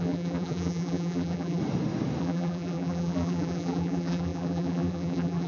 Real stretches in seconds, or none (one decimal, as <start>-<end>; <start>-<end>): 1.6-2.2